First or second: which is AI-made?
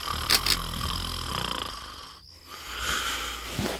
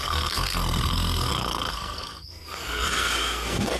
second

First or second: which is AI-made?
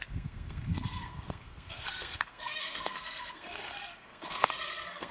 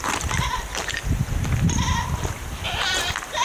first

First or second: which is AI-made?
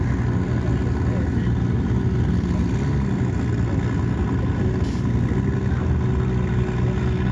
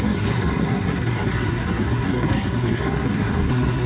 second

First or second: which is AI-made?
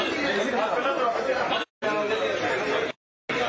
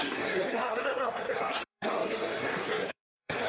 second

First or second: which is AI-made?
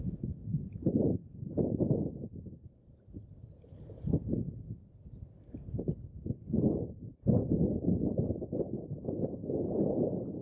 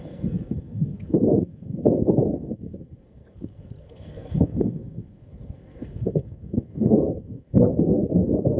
second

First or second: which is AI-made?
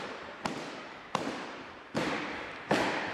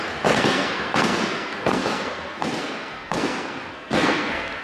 second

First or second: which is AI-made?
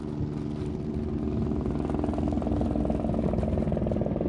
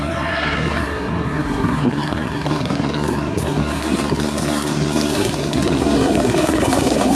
second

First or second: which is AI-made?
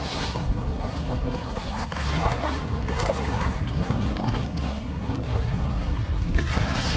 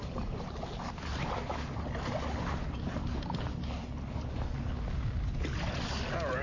first